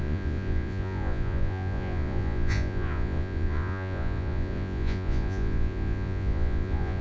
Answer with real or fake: fake